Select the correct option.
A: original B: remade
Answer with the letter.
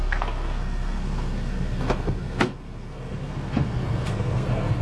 B